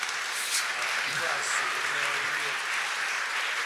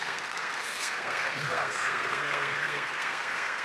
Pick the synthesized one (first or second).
second